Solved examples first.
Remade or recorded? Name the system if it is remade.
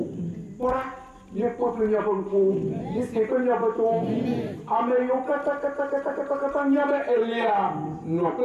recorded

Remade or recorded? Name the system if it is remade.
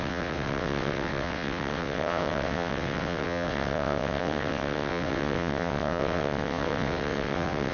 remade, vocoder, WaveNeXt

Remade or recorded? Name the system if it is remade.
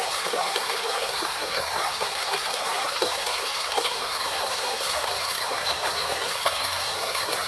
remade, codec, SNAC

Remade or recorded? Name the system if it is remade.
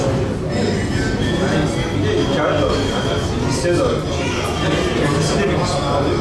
recorded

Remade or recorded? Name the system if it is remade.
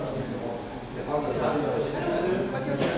recorded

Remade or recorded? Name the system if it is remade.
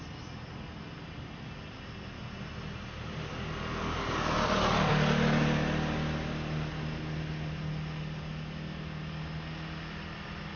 recorded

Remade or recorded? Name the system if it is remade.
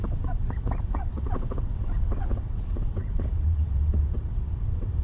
remade, vocoder, WaveNeXt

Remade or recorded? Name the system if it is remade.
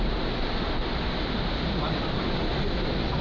recorded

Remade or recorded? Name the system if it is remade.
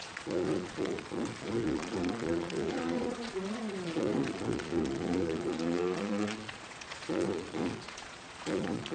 remade, vocoder, Vocos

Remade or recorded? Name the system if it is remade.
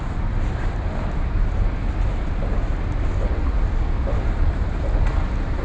recorded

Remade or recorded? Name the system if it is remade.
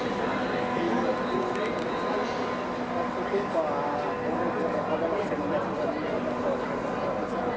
recorded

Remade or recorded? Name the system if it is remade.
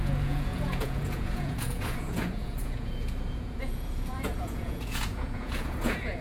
remade, vocoder, Vocos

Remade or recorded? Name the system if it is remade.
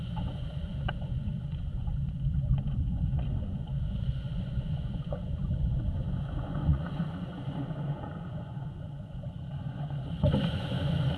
remade, vocoder, Vocos